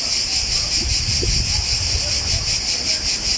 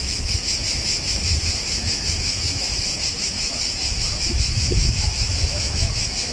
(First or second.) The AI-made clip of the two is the second